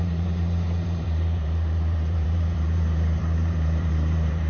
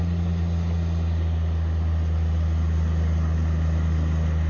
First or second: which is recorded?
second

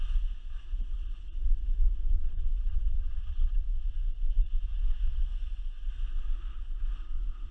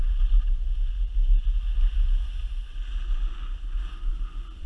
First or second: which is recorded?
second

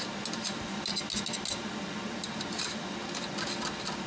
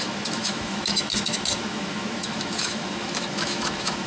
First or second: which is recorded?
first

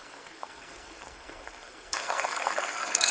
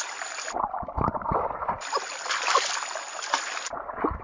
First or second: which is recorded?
second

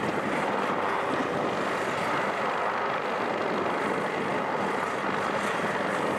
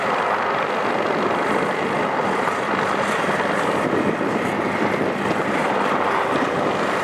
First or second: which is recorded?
first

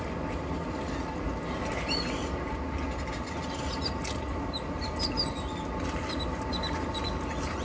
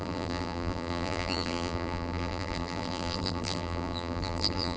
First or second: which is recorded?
first